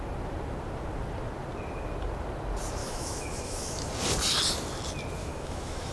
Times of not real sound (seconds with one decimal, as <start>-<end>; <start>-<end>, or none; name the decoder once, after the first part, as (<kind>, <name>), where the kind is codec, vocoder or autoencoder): 2.8-3.9 (autoencoder, DAC-VAE); 5.2-5.9